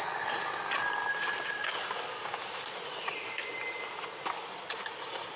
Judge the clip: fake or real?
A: real